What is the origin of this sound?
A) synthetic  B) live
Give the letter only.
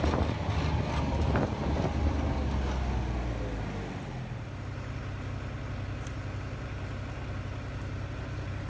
B